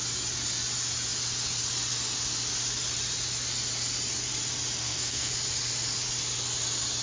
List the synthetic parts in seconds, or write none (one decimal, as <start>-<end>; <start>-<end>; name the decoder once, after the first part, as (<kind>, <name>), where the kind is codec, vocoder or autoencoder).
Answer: 4.8-5.3 (codec, SNAC)

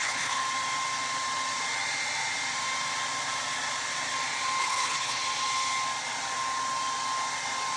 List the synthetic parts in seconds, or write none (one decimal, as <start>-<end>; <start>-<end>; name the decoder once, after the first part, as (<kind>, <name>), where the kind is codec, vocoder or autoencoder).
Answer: 0.0-0.4 (codec, HILCodec); 4.6-5.2